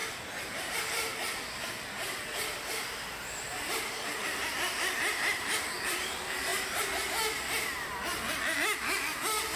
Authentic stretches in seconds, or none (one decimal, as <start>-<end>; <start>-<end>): 0.0-0.7; 6.5-9.6